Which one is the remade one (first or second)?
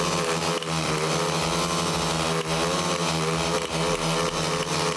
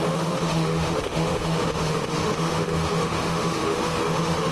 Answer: second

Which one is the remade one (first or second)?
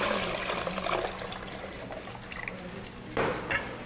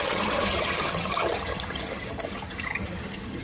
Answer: second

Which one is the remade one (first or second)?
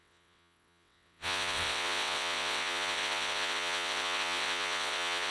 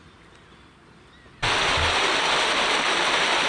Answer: first